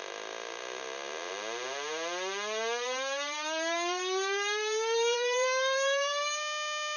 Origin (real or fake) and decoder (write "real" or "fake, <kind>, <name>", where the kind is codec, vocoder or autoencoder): fake, vocoder, BigVGAN v2